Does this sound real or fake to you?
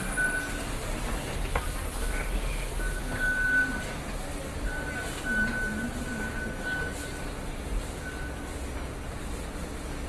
real